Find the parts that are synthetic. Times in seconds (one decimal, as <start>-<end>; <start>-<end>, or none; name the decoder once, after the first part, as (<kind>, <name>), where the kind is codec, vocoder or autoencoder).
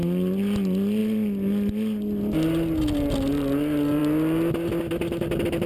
none